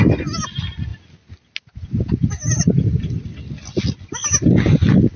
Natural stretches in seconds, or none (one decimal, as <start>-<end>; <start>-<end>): 0.0-5.2